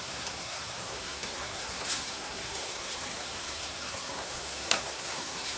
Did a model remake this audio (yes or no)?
yes